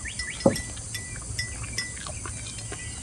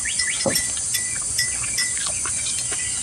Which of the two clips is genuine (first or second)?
first